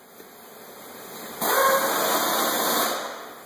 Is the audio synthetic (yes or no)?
no